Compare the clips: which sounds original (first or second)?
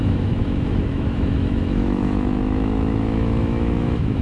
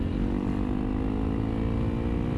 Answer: second